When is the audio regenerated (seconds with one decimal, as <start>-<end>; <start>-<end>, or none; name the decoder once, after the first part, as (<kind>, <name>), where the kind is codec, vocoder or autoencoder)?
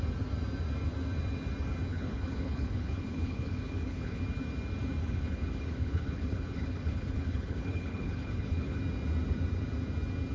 1.9-4.2 (codec, HILCodec); 5.0-8.8